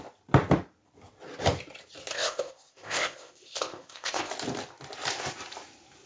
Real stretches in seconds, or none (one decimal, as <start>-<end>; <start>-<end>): 0.0-2.1; 4.3-6.1